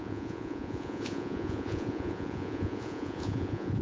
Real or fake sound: fake